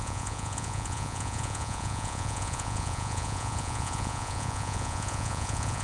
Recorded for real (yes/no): no